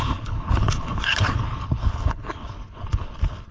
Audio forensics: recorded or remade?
remade